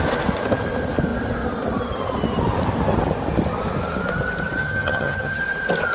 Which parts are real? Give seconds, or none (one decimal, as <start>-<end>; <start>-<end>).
0.0-4.6; 5.4-5.9